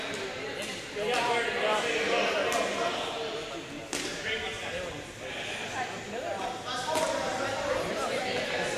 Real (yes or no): yes